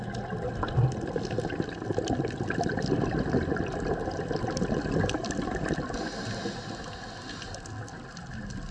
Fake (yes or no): no